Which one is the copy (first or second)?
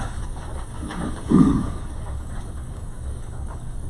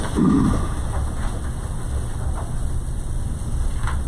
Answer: first